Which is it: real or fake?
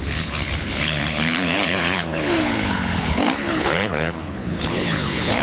fake